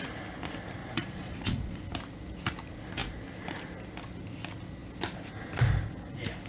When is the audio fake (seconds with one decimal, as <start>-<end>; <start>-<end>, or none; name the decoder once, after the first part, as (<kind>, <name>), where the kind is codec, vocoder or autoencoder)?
0.8-1.8 (vocoder, Vocos)